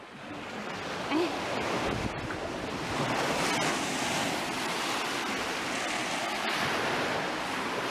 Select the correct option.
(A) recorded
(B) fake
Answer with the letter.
A